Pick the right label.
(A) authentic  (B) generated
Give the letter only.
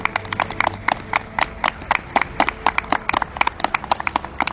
A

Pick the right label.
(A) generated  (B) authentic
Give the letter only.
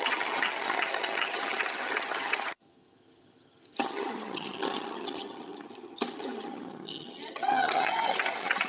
A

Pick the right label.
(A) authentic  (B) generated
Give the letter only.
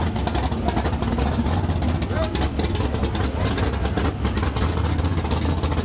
A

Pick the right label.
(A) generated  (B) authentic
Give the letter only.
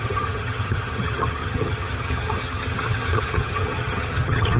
A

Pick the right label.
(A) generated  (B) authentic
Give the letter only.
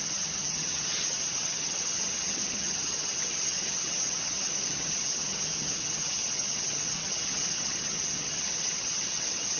A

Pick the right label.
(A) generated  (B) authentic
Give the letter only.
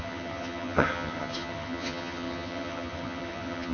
A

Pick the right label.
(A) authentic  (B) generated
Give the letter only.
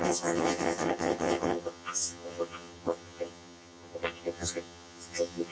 B